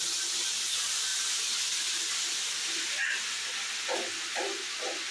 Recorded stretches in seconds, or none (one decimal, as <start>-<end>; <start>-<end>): 0.0-5.1

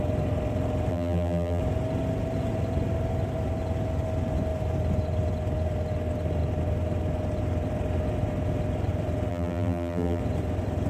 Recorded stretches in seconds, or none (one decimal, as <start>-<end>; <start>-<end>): 0.0-0.9; 1.6-9.3; 10.2-10.9

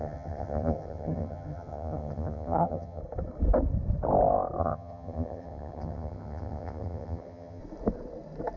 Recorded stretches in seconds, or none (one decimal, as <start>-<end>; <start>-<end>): 3.0-4.6; 7.6-8.6